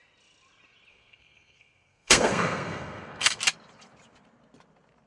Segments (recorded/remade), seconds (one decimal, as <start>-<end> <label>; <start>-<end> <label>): 0.0-0.9 recorded; 0.9-3.4 remade; 3.4-5.1 recorded